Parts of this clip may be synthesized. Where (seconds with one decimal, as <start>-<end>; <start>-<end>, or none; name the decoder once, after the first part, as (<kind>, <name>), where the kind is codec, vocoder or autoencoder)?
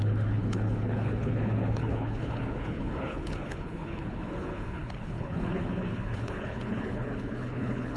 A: 0.0-8.0 (codec, HILCodec)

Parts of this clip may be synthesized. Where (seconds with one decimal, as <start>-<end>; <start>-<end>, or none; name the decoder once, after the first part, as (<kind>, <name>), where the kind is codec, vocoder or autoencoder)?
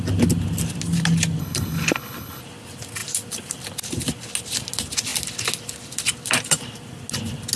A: 1.4-2.4 (codec, HILCodec)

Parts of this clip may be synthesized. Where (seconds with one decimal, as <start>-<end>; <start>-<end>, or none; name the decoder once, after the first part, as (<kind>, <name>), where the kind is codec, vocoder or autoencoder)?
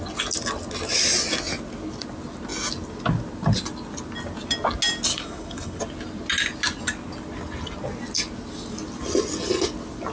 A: 5.1-5.8 (codec, HILCodec)